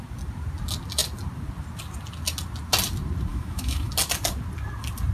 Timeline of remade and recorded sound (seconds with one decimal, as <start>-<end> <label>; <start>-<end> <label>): 0.0-3.3 recorded; 3.3-3.9 remade; 3.9-5.1 recorded